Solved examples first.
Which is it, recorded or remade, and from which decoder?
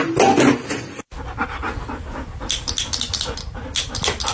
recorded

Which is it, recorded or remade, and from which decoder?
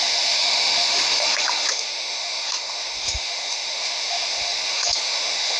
remade, autoencoder, DAC-VAE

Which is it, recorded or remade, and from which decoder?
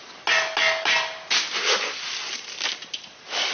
recorded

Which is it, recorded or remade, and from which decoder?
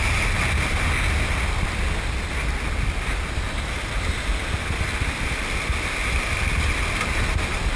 recorded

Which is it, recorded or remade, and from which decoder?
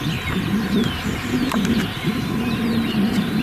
remade, vocoder, BigVGAN v2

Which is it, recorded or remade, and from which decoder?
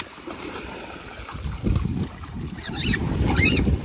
remade, vocoder, BigVGAN v2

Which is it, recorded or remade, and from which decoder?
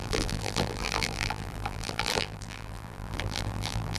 remade, vocoder, BigVGAN v2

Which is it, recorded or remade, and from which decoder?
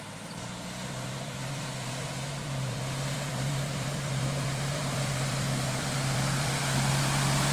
remade, vocoder, BigVGAN v2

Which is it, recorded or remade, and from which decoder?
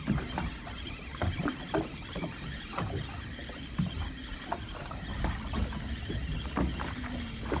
recorded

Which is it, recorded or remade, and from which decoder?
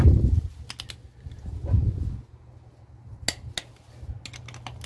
recorded